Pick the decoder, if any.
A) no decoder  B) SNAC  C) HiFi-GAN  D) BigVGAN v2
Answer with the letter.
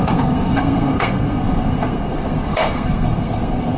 B